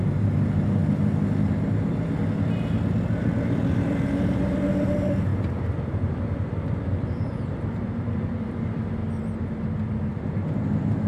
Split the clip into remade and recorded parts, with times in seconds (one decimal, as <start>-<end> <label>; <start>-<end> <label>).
0.0-0.8 remade; 0.8-3.2 recorded; 3.2-5.3 remade; 5.3-7.8 recorded; 7.8-9.0 remade; 9.0-10.0 recorded; 10.0-11.1 remade